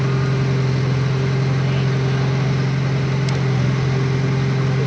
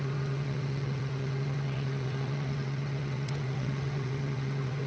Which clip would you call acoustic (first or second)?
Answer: first